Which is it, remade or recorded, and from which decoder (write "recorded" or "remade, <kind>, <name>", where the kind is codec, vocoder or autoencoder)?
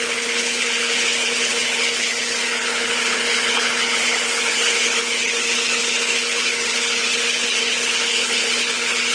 remade, codec, HILCodec